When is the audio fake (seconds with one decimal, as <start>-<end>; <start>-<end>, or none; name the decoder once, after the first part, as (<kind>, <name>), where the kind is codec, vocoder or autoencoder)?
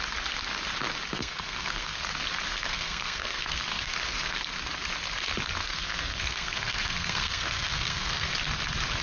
1.1-2.0 (codec, SNAC); 2.5-4.4; 5.6-8.3